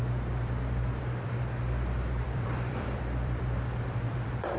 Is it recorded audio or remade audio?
remade